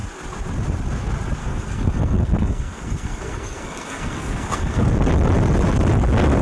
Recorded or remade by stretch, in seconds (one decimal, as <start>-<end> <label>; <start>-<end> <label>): 0.0-1.4 recorded; 1.4-4.9 remade; 4.9-6.4 recorded